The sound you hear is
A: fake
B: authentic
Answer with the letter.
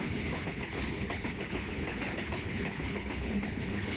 A